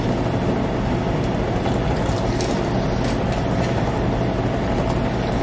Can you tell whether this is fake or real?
real